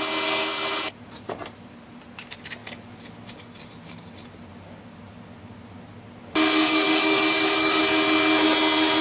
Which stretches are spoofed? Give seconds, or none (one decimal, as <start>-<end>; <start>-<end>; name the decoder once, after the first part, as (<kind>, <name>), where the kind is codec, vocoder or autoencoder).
6.5-7.8 (codec, DAC)

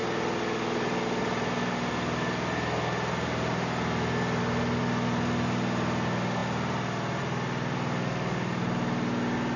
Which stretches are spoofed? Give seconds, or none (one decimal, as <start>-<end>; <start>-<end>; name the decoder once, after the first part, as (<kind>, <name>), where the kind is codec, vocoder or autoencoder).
none

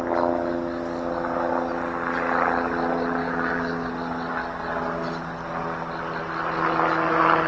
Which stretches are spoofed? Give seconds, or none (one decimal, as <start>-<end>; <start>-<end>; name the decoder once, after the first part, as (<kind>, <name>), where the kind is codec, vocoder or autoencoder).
3.2-3.9 (codec, DAC)

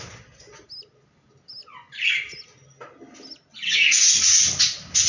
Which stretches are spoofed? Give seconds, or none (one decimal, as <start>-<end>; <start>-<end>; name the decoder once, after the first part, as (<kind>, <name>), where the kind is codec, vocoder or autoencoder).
none

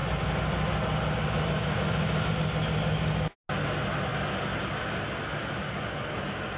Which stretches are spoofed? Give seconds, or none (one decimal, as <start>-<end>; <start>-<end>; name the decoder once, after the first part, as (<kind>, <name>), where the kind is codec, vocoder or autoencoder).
none

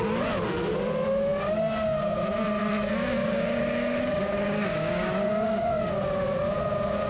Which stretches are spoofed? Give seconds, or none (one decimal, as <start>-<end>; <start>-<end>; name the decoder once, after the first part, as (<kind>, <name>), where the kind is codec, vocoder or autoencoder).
3.2-5.9 (codec, DAC)

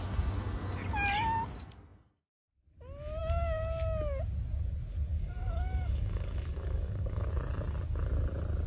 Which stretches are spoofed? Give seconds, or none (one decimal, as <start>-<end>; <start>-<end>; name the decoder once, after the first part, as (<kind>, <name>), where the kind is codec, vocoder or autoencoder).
5.1-7.3 (codec, DAC)

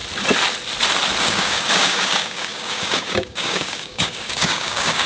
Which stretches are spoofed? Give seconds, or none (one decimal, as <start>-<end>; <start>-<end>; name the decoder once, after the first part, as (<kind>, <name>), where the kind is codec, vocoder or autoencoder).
1.2-5.1 (codec, DAC)